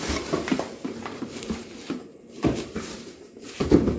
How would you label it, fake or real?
fake